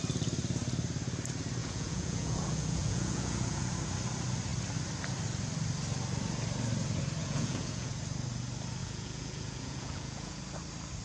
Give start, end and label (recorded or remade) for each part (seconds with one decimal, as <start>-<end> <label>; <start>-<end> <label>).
0.0-1.6 recorded; 1.6-3.6 remade; 3.6-7.2 recorded; 7.2-8.0 remade; 8.0-8.8 recorded; 8.8-10.4 remade; 10.4-11.0 recorded